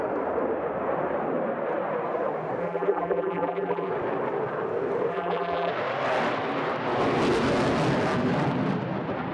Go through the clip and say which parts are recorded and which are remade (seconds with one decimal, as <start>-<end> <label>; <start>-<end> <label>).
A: 0.0-2.6 recorded; 2.6-3.9 remade; 3.9-5.1 recorded; 5.1-5.7 remade; 5.7-9.3 recorded